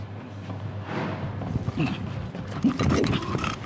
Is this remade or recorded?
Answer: recorded